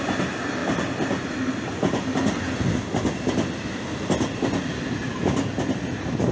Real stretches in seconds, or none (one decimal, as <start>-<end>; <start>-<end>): 0.0-0.6; 2.6-6.3